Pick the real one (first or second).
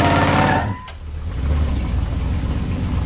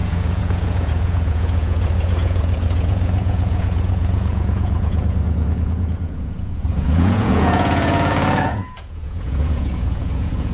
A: first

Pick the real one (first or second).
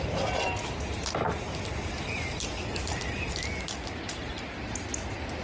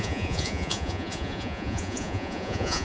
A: first